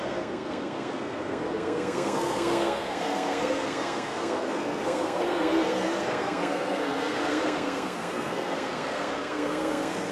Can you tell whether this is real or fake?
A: fake